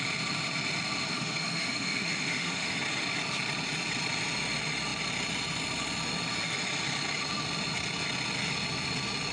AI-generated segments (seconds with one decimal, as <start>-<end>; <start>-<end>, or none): 1.1-2.8